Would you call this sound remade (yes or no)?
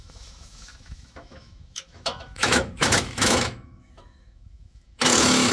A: yes